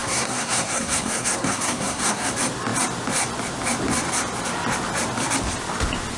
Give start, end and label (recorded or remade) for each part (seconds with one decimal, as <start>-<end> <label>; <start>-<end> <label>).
0.0-2.3 remade; 2.3-6.2 recorded